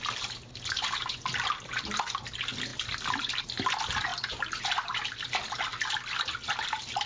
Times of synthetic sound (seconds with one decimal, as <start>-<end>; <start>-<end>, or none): none